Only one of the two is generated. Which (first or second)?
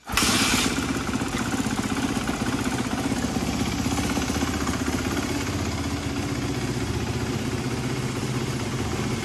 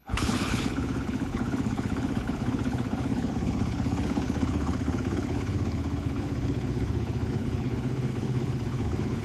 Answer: second